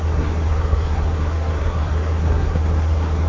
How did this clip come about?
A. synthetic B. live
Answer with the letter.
A